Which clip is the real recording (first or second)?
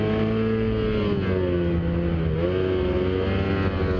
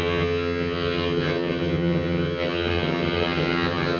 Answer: first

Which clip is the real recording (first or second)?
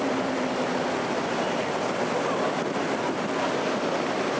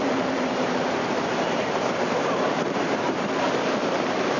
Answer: first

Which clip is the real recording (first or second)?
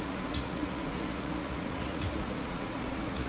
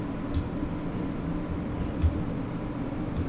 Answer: second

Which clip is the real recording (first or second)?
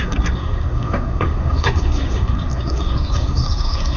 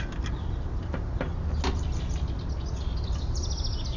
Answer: second